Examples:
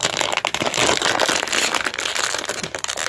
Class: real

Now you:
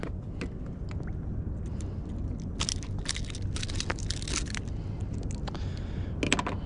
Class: real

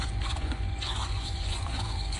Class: fake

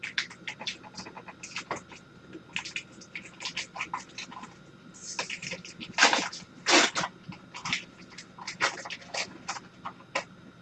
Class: real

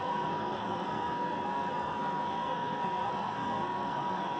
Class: fake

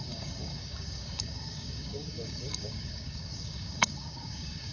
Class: fake